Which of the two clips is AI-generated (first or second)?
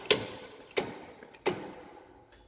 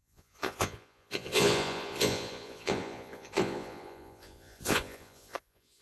second